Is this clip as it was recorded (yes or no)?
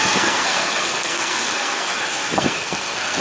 no